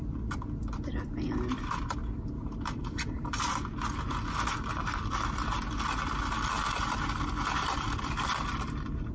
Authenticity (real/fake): real